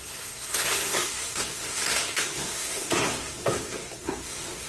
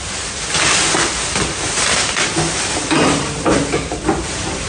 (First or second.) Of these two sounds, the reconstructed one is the first